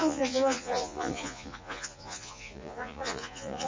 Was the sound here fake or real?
fake